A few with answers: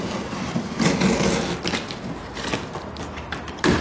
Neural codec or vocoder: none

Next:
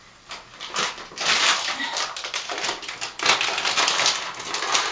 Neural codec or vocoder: none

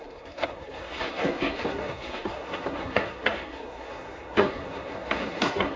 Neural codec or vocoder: codec, SNAC